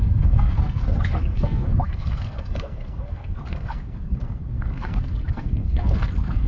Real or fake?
fake